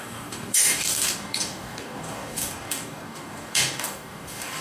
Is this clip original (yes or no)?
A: no